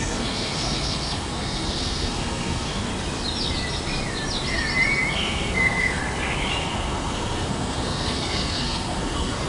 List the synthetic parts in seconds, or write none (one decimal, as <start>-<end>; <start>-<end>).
0.0-2.9; 5.1-6.0; 6.6-9.5